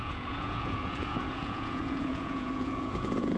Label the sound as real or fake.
fake